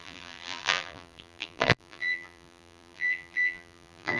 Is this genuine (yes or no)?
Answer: no